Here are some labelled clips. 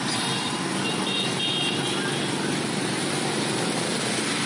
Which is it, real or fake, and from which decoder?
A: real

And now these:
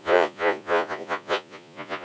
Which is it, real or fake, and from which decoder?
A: fake, vocoder, Vocos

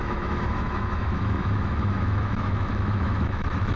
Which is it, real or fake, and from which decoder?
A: fake, autoencoder, DAC-VAE